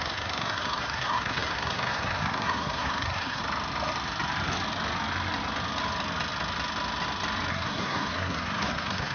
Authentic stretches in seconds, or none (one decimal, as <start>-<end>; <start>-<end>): 3.4-7.5